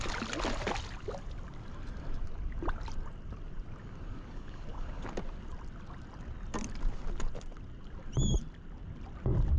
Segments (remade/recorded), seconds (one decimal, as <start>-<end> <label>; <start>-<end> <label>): 0.0-3.8 recorded; 3.8-5.1 remade; 5.1-9.6 recorded